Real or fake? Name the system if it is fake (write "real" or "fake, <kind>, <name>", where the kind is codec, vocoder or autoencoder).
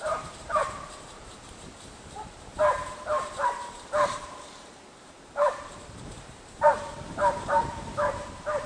fake, vocoder, BigVGAN v2